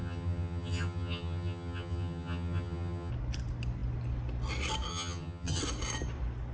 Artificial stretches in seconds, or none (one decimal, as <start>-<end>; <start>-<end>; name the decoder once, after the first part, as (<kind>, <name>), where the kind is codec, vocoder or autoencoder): 0.0-3.1 (vocoder, HiFi-GAN); 4.9-5.6